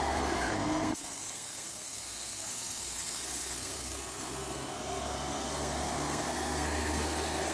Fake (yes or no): yes